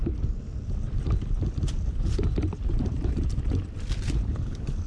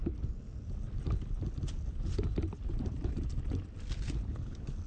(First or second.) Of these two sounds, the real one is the second